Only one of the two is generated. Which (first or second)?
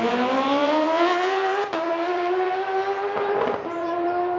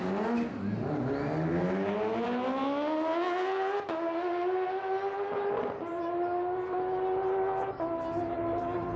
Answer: first